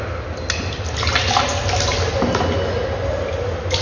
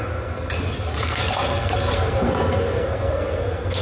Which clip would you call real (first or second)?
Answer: first